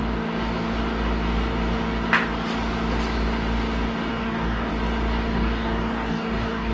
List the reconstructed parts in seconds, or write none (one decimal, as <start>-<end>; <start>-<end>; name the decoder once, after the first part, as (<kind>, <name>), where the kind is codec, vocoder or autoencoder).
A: 4.1-4.7 (codec, DAC); 5.3-6.7